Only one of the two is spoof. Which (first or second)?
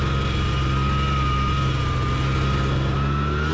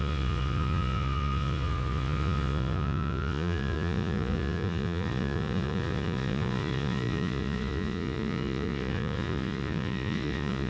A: second